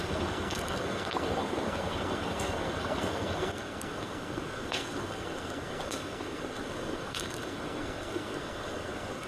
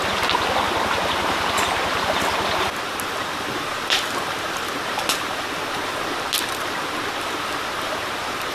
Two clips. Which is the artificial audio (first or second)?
first